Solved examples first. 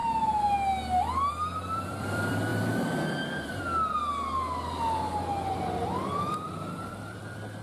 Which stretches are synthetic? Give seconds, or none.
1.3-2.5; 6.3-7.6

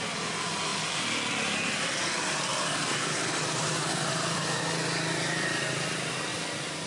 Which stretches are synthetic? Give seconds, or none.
2.5-4.6; 6.3-6.9

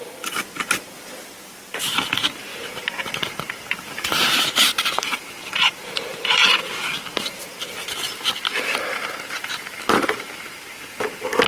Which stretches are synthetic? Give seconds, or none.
2.5-5.7

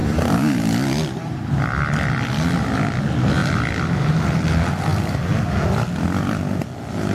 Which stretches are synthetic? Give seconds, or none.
3.4-4.5

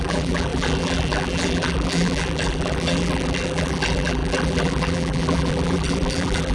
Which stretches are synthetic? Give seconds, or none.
0.0-6.5